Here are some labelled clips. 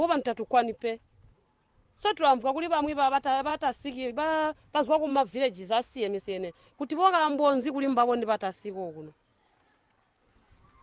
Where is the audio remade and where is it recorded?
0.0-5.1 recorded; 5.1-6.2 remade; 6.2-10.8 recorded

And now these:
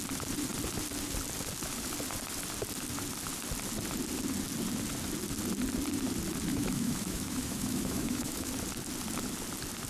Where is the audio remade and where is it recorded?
0.0-6.5 recorded; 6.5-8.5 remade; 8.5-9.9 recorded

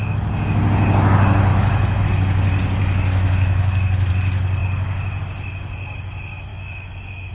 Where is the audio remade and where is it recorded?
0.0-1.5 recorded; 1.5-2.0 remade; 2.0-2.8 recorded; 2.8-4.1 remade; 4.1-6.5 recorded; 6.5-7.3 remade

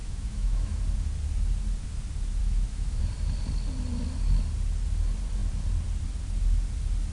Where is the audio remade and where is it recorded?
0.0-0.8 remade; 0.8-2.4 recorded; 2.4-3.0 remade; 3.0-7.1 recorded

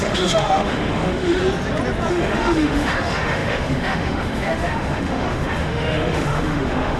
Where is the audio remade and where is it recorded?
0.0-1.4 remade; 1.4-2.1 recorded; 2.1-7.0 remade

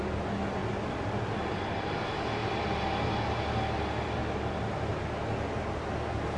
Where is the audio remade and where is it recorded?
0.0-6.4 recorded